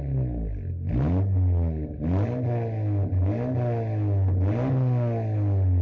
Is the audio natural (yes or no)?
yes